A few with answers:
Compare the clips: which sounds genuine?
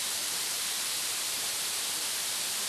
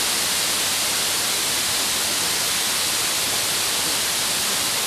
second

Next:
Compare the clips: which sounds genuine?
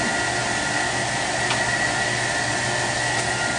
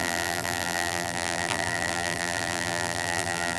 first